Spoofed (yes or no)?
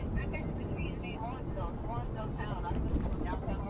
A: no